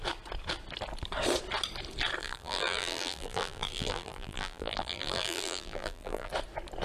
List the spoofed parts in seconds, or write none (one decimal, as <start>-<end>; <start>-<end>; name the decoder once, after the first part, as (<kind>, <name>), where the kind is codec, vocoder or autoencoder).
2.2-6.3 (vocoder, BigVGAN v2)